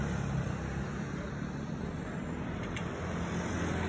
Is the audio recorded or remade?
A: recorded